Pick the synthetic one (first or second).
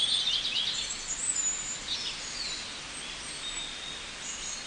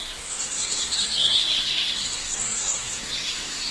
second